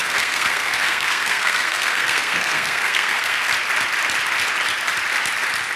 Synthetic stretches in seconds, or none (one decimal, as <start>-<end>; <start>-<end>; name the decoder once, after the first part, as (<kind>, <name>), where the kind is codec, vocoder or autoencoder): 0.0-3.5 (codec, SNAC)